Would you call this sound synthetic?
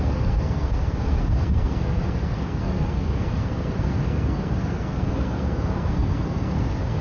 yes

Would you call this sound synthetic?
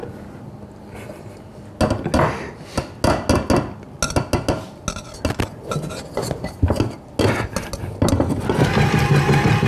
no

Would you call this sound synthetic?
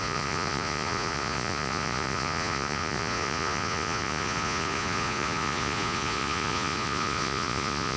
yes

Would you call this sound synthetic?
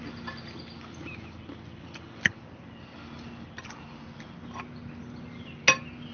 no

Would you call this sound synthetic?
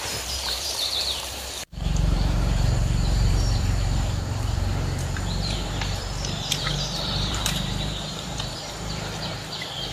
yes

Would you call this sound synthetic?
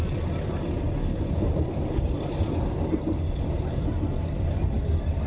no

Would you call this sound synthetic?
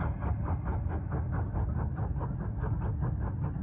no